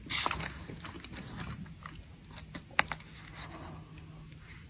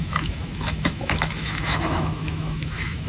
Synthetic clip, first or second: second